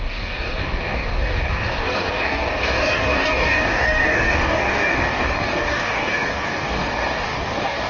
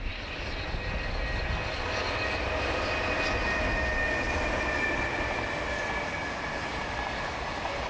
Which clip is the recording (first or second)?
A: second